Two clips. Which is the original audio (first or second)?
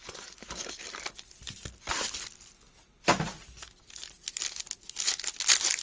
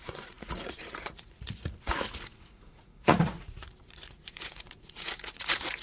first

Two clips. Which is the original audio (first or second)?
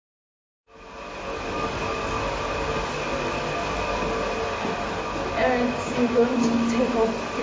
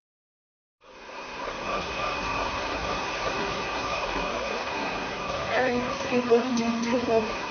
first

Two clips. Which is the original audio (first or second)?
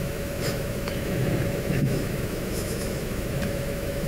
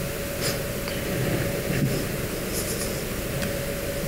second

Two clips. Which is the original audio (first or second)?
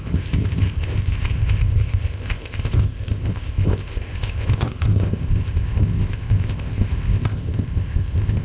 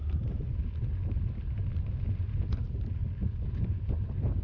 second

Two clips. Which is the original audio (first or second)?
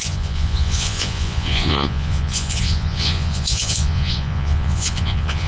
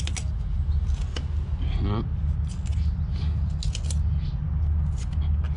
second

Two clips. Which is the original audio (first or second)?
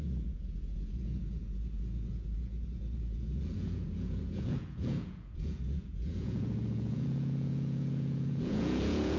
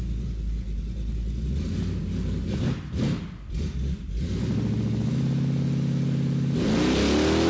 second